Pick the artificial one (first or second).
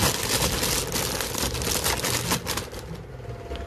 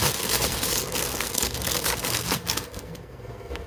second